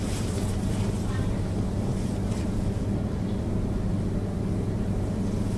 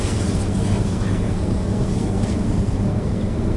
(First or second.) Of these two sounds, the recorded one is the first